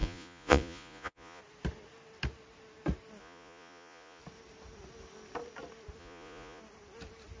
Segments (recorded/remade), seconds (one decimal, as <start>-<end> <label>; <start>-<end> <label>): 0.0-1.4 remade; 1.4-3.2 recorded; 3.2-4.2 remade; 4.2-6.0 recorded; 6.0-6.6 remade; 6.6-7.4 recorded